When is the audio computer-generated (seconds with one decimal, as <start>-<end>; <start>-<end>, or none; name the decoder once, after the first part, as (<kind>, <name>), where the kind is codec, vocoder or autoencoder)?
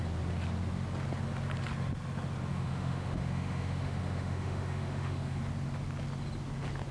2.5-5.4 (autoencoder, DAC-VAE)